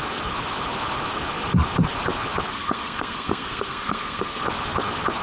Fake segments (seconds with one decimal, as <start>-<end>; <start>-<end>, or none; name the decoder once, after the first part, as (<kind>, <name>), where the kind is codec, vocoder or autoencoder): 2.5-4.4 (codec, SNAC)